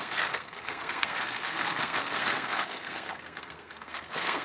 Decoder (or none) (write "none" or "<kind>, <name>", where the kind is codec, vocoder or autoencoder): codec, SNAC